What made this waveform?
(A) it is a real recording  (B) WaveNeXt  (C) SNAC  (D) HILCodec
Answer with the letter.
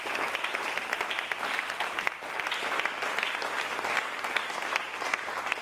A